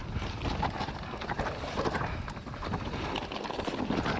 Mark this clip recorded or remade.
recorded